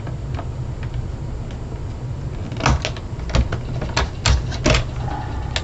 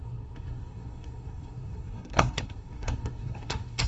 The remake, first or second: second